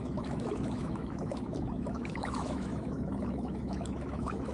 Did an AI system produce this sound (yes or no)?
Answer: yes